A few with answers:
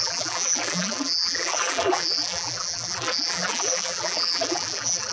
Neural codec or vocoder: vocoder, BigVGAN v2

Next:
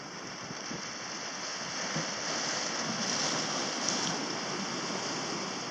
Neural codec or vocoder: none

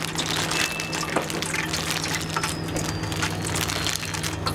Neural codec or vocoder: none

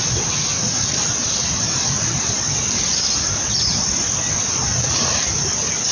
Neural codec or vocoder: none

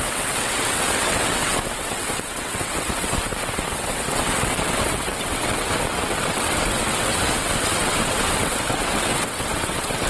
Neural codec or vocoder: vocoder, WaveNeXt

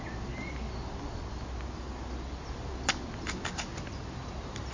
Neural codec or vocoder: none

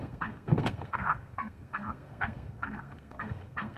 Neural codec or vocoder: codec, SNAC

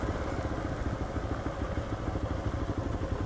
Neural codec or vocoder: none